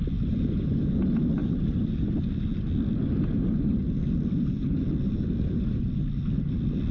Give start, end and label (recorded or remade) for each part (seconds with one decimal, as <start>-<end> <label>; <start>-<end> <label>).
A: 0.0-6.9 recorded